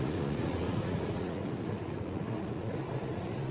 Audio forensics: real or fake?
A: fake